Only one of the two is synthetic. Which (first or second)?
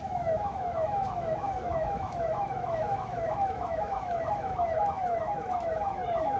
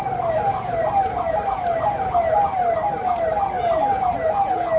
first